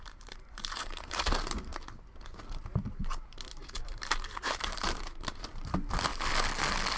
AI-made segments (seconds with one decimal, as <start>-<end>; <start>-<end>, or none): 0.0-1.7; 3.8-6.1

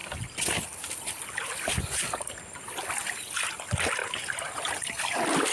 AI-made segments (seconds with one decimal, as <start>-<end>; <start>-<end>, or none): 4.0-4.6

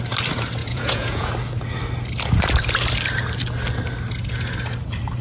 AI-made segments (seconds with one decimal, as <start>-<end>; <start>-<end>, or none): 0.6-1.3

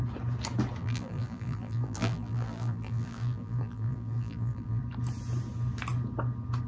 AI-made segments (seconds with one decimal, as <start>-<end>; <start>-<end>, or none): 0.8-4.8

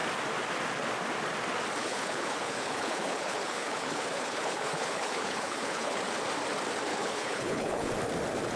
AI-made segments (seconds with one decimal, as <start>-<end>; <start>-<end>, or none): 1.8-6.0; 6.9-7.9

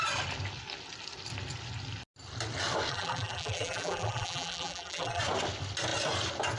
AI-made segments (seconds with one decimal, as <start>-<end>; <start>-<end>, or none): 2.9-5.2

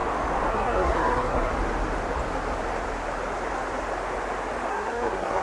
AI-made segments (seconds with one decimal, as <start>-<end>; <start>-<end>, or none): 0.5-1.5; 4.7-5.4